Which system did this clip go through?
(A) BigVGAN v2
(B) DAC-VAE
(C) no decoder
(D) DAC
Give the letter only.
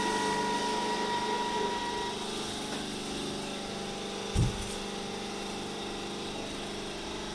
C